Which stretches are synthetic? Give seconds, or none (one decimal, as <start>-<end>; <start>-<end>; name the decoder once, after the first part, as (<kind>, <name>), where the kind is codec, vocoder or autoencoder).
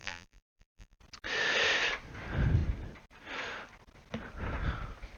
0.0-1.0 (vocoder, BigVGAN v2)